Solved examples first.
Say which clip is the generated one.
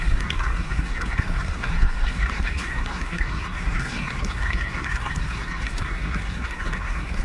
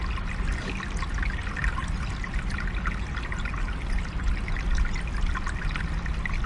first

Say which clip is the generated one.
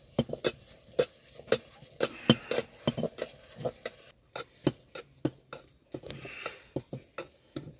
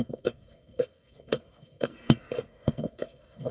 second